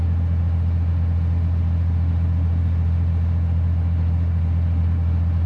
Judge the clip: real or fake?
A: real